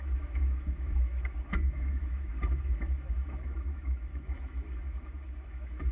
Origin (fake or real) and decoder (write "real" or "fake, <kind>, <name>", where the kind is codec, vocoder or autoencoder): fake, autoencoder, DAC-VAE